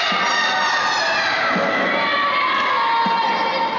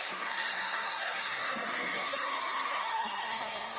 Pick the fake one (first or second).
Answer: second